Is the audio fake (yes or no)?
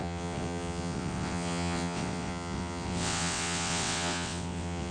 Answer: yes